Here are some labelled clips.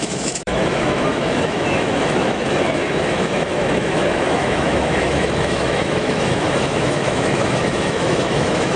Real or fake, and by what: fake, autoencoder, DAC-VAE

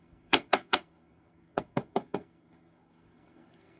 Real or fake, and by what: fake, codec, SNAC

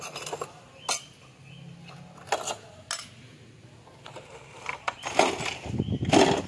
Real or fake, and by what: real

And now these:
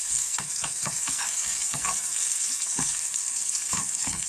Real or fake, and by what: fake, codec, SNAC